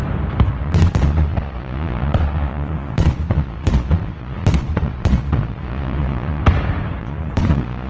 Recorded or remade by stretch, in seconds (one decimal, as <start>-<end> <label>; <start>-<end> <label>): 0.0-0.5 recorded; 0.5-6.4 remade; 6.4-7.0 recorded; 7.0-7.9 remade